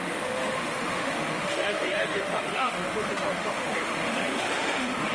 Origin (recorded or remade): remade